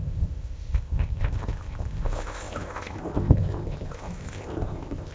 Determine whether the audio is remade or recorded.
remade